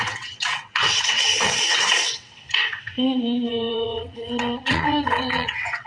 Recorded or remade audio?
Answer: remade